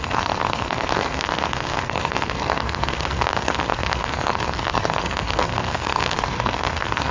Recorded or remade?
remade